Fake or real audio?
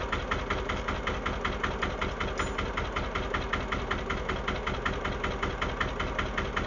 real